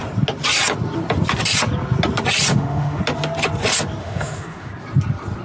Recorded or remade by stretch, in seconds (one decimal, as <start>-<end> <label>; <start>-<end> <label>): 0.0-2.5 recorded; 2.5-3.0 remade; 3.0-4.0 recorded; 4.0-4.7 remade; 4.7-5.4 recorded